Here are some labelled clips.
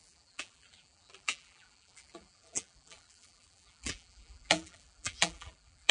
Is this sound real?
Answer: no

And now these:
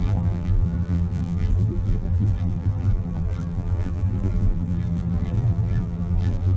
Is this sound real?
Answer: no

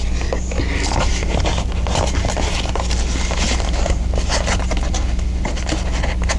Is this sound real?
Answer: yes